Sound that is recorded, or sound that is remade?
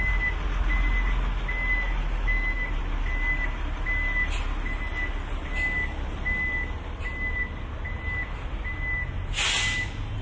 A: recorded